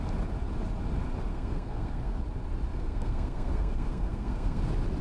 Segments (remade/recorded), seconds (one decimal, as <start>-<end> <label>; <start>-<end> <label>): 0.0-1.3 recorded; 1.3-2.2 remade; 2.2-2.7 recorded; 2.7-4.6 remade; 4.6-5.0 recorded